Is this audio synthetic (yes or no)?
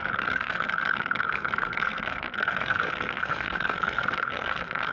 yes